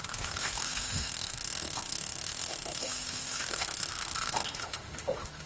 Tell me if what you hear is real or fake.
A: fake